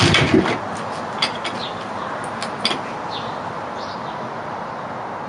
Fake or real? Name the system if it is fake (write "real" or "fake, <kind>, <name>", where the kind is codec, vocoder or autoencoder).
real